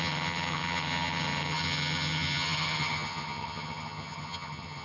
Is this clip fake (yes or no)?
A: yes